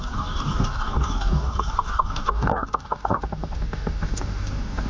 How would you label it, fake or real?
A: fake